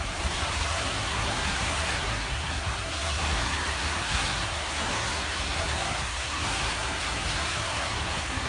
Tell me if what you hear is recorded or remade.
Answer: remade